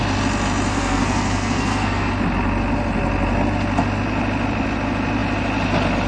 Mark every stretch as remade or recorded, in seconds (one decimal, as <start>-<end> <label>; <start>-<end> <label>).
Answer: 0.0-0.7 recorded; 0.7-2.1 remade; 2.1-6.1 recorded